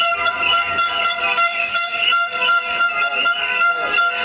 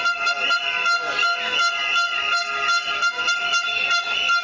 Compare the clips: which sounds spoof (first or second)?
first